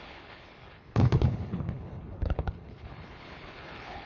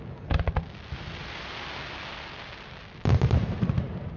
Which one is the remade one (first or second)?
first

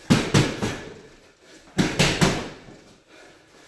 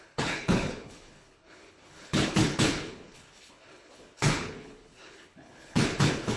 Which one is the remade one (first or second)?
second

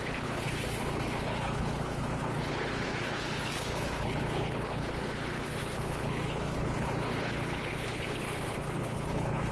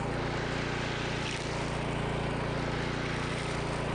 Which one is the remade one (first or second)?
first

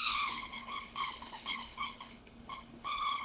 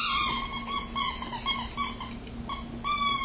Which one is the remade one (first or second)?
first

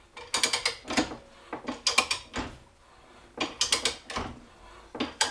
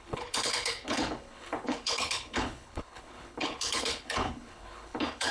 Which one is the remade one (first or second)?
second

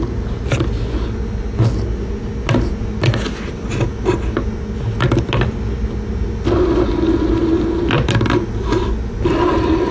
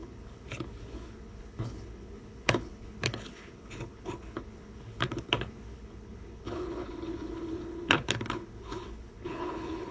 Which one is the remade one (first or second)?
second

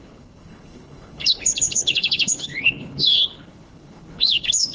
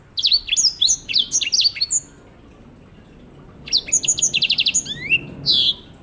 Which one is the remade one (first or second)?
first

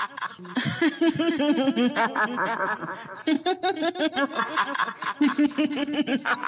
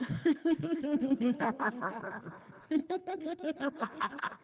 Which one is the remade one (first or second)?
second